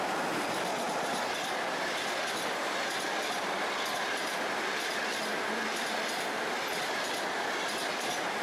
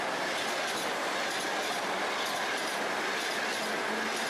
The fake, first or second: first